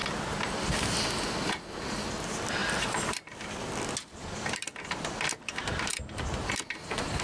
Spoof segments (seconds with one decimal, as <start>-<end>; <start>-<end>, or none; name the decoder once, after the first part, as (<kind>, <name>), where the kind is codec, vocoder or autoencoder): none